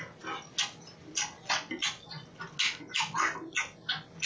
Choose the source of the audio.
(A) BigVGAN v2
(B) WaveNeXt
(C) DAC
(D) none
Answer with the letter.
D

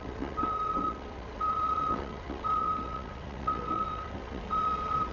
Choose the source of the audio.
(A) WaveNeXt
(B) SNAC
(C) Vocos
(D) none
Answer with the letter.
A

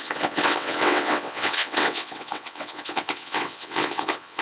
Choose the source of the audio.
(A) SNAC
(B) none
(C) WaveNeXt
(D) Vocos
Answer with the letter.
C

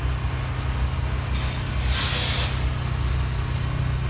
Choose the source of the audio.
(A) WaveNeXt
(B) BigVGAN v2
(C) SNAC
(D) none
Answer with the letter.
D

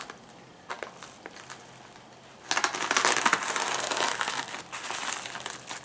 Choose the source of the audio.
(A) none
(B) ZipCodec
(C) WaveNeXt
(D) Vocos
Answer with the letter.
A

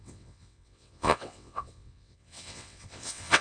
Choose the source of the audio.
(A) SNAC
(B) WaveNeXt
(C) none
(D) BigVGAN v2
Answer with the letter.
B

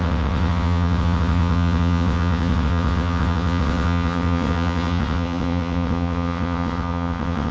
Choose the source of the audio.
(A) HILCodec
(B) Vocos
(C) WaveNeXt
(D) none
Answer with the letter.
C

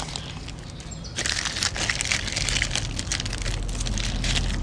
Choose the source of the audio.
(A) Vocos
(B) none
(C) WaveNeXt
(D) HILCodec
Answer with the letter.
B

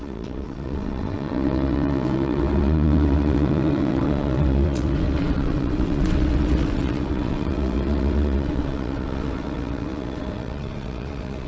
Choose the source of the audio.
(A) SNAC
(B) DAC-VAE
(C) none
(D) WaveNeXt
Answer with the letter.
D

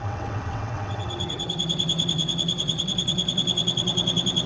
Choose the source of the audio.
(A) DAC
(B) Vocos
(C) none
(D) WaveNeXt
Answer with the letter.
D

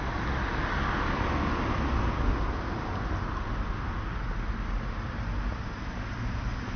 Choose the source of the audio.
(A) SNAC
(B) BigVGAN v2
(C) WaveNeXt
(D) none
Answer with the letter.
D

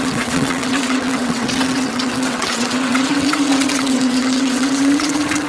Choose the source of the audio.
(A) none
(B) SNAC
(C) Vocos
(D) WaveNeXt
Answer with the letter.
D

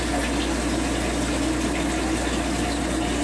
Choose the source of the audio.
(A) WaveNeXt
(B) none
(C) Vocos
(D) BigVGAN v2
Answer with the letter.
B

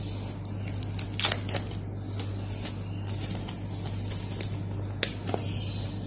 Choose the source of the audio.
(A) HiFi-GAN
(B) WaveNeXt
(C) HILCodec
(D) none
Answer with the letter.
D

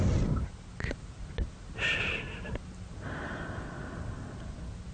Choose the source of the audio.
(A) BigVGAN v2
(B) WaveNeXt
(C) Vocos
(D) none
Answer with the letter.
D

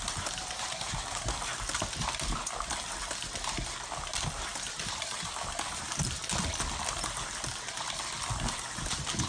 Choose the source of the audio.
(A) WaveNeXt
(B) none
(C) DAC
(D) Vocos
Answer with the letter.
B